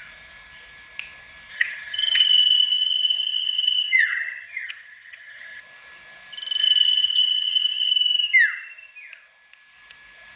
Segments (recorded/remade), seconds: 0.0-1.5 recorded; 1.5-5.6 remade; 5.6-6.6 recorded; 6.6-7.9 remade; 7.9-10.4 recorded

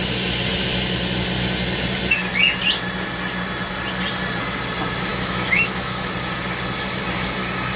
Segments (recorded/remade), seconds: 0.0-5.1 recorded; 5.1-6.1 remade; 6.1-7.8 recorded

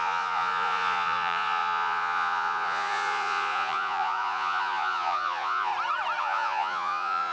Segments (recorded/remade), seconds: 0.0-5.7 remade; 5.7-6.2 recorded; 6.2-7.3 remade